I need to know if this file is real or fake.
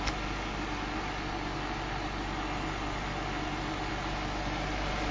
real